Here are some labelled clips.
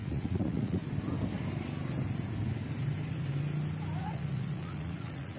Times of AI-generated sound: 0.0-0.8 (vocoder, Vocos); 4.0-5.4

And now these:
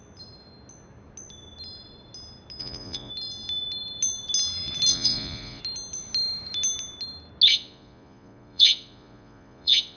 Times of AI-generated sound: 2.6-3.1 (vocoder, Vocos); 4.9-5.6; 7.5-10.0

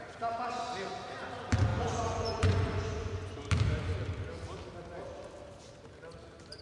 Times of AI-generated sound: 1.7-3.3 (vocoder, Vocos)

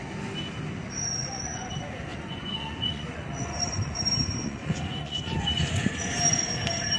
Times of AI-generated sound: 1.2-1.7 (vocoder, Vocos); 2.1-4.0; 4.4-6.1

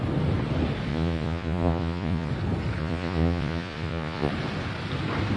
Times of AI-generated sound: 0.9-2.3 (vocoder, Vocos); 2.8-4.3

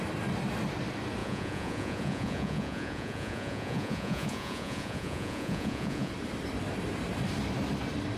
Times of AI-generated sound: 1.2-6.1 (vocoder, Vocos)

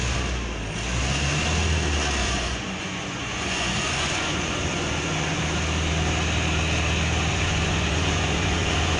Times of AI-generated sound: 2.2-5.4 (vocoder, Vocos); 7.3-9.0